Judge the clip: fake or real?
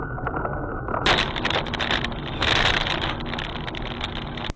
real